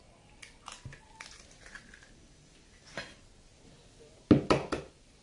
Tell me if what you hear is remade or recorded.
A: recorded